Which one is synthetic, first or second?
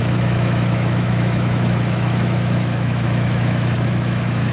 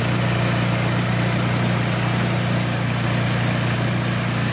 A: first